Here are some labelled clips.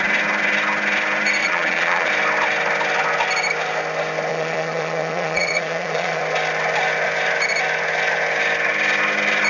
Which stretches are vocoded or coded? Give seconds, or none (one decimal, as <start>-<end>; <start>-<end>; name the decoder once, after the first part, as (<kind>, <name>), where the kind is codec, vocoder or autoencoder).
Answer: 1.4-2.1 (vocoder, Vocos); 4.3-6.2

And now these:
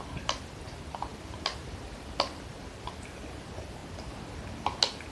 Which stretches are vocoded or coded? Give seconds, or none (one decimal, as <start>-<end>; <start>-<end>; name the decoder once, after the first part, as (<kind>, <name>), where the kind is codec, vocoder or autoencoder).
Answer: none

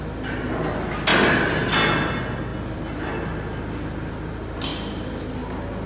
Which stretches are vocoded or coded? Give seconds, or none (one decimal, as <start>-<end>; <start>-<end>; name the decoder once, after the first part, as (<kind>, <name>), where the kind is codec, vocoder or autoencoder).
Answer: none

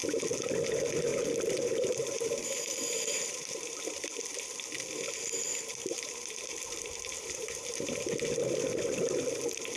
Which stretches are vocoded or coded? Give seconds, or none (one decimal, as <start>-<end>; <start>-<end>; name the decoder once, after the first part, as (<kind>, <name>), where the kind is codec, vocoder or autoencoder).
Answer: 1.1-4.2 (vocoder, BigVGAN v2); 5.7-7.9